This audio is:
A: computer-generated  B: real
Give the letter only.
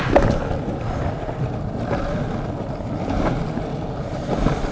B